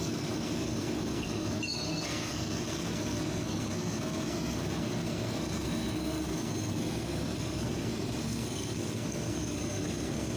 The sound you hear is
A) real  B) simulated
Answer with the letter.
B